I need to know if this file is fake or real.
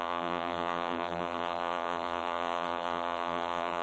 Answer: fake